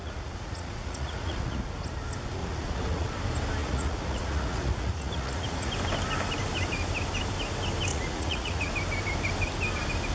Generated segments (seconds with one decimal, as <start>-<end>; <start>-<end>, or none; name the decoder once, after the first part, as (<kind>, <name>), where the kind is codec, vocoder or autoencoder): 0.0-1.7 (vocoder, Vocos); 2.4-3.1; 3.6-5.7; 7.9-8.7